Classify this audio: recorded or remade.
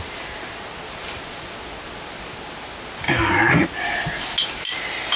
recorded